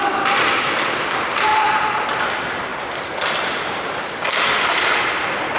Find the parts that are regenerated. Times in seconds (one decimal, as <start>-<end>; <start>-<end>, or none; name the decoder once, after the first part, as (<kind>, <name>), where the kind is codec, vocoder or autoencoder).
none